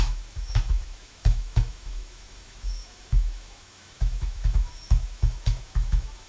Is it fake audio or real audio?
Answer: fake